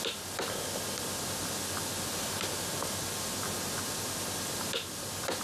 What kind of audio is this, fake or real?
real